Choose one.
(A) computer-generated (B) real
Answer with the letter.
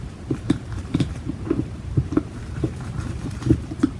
A